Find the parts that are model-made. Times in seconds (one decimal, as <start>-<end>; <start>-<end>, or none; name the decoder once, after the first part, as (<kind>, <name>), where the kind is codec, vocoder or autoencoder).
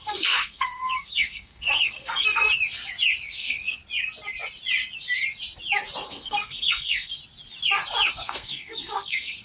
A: 0.0-2.5 (codec, SNAC); 3.3-3.8; 6.1-7.1; 8.1-9.4